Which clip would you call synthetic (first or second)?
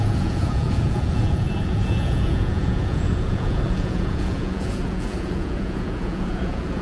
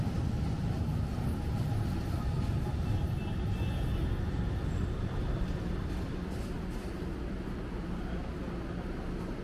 first